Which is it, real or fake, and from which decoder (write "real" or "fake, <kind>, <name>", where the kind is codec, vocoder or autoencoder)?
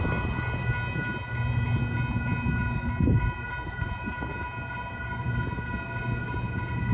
real